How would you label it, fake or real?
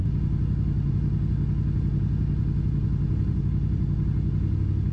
real